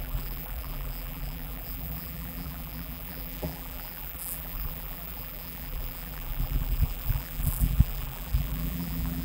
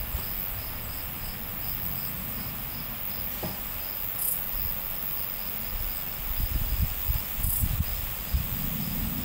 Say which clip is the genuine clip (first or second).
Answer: second